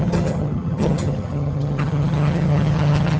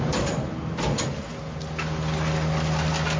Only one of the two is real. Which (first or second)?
second